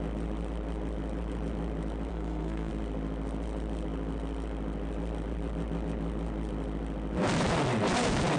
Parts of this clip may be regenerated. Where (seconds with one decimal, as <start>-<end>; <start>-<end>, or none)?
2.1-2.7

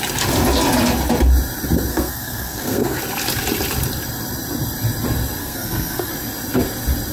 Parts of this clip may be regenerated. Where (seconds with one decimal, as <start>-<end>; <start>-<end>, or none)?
1.9-3.0; 5.4-6.1

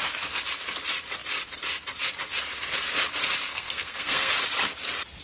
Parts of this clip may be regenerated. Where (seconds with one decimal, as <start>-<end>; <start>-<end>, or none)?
3.5-4.3